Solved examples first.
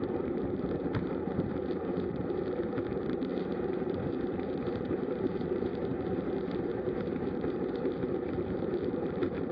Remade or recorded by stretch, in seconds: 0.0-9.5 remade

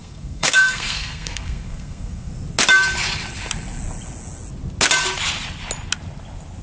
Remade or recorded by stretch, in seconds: 0.0-2.3 remade; 2.3-6.6 recorded

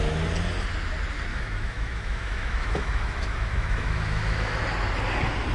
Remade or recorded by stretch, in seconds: 0.0-1.3 recorded; 1.3-4.6 remade; 4.6-5.5 recorded

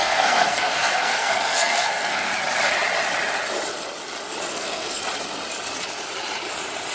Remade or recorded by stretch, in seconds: 0.0-2.3 remade; 2.3-4.5 recorded; 4.5-5.0 remade; 5.0-6.9 recorded

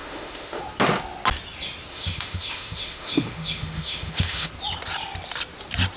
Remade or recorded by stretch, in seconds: 0.0-0.6 remade; 0.6-1.9 recorded; 1.9-4.5 remade; 4.5-6.0 recorded

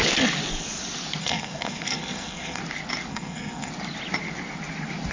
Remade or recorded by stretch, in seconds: 0.0-1.2 recorded; 1.2-2.6 remade; 2.6-3.1 recorded; 3.1-3.7 remade; 3.7-5.1 recorded

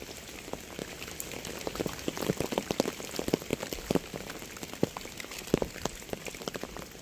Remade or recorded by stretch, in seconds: 0.0-7.0 recorded